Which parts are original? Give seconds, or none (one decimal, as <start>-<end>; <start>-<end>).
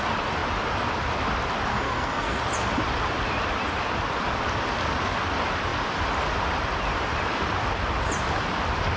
0.0-1.7; 2.4-9.0